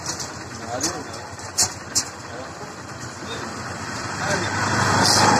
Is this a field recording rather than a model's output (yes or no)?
yes